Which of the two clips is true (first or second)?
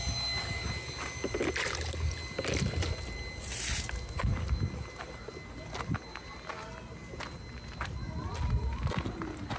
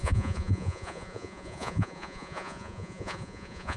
first